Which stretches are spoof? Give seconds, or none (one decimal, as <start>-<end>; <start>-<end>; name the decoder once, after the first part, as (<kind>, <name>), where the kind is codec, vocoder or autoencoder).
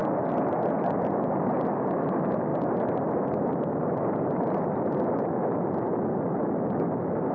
none